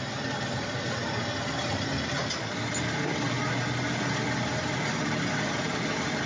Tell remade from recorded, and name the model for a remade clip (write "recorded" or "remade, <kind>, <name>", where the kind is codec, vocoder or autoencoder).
recorded